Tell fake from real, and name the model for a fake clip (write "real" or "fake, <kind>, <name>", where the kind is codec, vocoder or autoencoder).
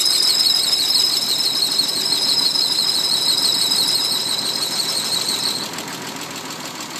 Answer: real